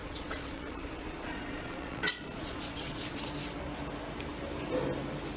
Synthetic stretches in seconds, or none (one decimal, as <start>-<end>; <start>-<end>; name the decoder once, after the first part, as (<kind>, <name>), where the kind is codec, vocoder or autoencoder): 0.0-3.2 (vocoder, Vocos)